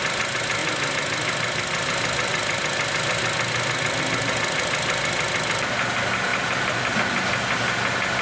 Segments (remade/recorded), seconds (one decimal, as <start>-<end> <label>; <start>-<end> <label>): 0.0-6.3 recorded; 6.3-6.9 remade; 6.9-8.2 recorded